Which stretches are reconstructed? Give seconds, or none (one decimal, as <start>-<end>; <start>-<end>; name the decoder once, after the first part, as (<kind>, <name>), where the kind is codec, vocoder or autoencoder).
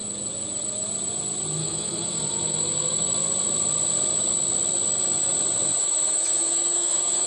1.6-3.2 (autoencoder, DAC-VAE); 5.8-7.3